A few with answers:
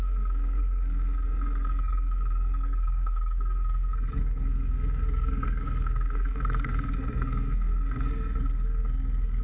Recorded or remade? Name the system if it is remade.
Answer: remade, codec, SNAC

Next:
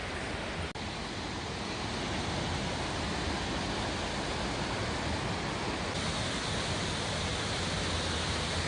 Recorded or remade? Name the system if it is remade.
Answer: recorded